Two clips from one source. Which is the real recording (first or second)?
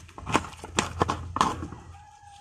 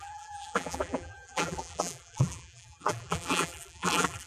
first